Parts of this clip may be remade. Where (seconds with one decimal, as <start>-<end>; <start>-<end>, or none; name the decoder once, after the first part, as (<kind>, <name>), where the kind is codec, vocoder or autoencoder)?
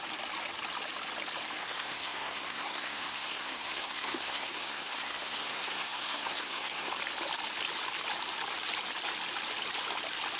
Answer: 1.6-6.9 (codec, SNAC)